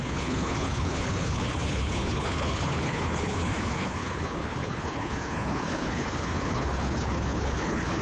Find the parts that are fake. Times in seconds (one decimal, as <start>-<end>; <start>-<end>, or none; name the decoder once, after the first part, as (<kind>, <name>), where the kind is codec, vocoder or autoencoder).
0.0-8.0 (codec, HILCodec)